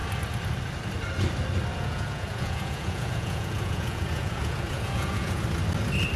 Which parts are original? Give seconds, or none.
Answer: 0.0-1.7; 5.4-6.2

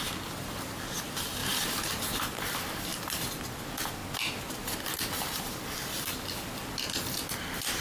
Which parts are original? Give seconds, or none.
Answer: 0.0-2.9; 3.5-7.8

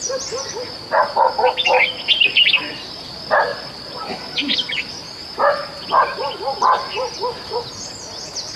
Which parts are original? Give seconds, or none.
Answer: 0.0-3.5; 7.7-8.6

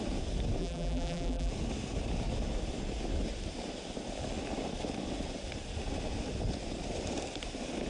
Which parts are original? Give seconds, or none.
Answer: 0.0-0.6; 1.5-7.9

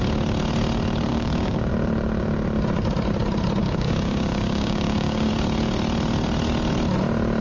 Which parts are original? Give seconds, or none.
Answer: 0.0-1.1; 1.7-3.6; 5.3-7.4